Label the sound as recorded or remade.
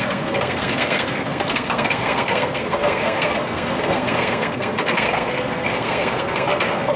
remade